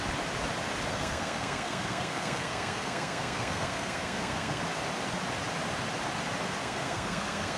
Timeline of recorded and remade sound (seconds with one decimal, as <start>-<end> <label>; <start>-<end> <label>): 0.0-0.9 recorded; 0.9-4.6 remade; 4.6-6.6 recorded; 6.6-7.6 remade

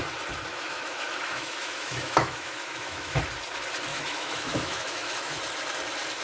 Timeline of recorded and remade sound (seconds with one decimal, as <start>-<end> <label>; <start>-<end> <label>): 0.0-0.5 recorded; 0.5-3.2 remade; 3.2-3.9 recorded; 3.9-5.4 remade; 5.4-6.2 recorded

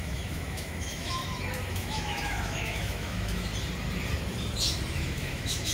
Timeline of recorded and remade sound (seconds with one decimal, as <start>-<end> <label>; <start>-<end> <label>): 0.0-1.2 remade; 1.2-1.7 recorded; 1.7-3.5 remade; 3.5-4.9 recorded; 4.9-5.7 remade

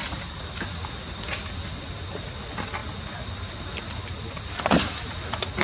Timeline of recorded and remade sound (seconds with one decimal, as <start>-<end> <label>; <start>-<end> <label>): 0.0-5.6 recorded

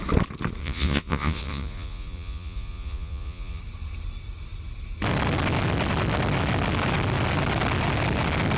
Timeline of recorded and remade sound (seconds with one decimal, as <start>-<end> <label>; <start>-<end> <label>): 0.0-0.6 recorded; 0.6-3.6 remade; 3.6-8.6 recorded